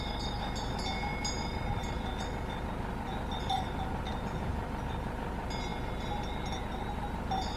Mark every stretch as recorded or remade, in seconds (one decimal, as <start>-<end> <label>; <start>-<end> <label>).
0.0-7.6 recorded

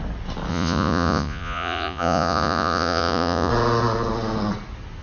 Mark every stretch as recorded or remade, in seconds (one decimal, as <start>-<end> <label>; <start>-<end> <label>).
0.0-0.5 recorded; 0.5-3.5 remade; 3.5-5.0 recorded

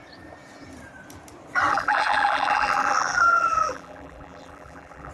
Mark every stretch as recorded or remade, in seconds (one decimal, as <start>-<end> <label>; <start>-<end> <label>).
0.0-1.7 recorded; 1.7-5.1 remade

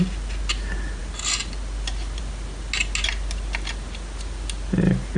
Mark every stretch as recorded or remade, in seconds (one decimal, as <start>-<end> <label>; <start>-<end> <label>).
0.0-5.2 recorded